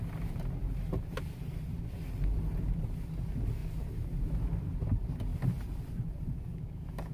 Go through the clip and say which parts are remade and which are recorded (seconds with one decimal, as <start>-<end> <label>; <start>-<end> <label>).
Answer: 0.0-6.5 recorded; 6.5-7.1 remade